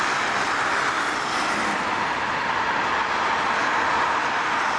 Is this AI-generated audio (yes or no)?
no